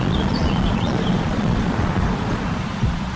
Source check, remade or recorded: remade